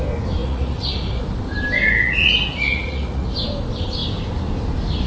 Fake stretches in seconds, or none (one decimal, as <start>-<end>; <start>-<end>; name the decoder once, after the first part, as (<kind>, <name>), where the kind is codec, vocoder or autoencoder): 0.4-1.2 (vocoder, Vocos); 1.8-3.3